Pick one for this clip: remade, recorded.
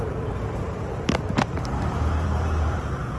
remade